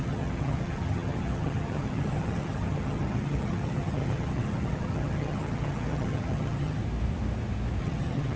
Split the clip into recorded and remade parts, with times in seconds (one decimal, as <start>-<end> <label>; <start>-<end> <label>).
0.0-6.8 remade; 6.8-7.8 recorded; 7.8-8.4 remade